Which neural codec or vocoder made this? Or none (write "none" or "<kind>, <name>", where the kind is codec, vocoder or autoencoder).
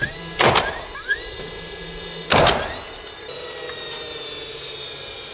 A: none